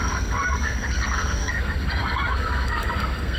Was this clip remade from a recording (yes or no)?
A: yes